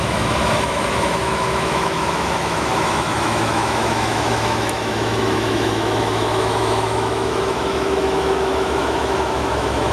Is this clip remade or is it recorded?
remade